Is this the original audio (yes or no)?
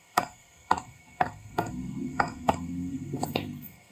no